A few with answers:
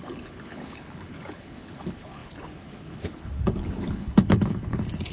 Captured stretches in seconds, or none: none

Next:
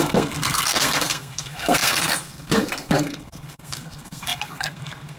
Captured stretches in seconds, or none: none

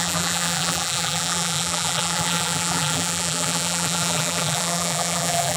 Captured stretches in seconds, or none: none

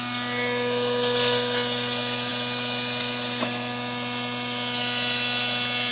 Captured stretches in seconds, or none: 0.0-5.9

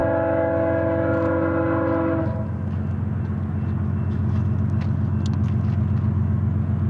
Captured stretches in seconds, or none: 0.0-6.9

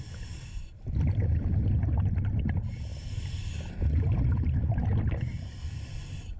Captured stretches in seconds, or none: 0.0-6.4